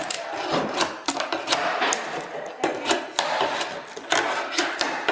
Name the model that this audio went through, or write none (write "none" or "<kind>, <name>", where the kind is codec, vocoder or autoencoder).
none